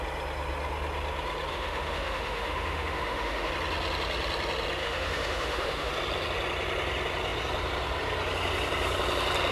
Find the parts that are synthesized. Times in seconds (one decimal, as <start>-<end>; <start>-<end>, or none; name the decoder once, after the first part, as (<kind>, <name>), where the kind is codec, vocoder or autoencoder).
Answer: 1.5-3.5 (autoencoder, DAC-VAE); 4.8-5.9